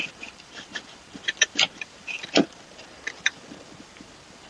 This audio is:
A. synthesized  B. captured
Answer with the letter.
A